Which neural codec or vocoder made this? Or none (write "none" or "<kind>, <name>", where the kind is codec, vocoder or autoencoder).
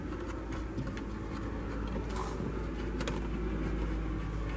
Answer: none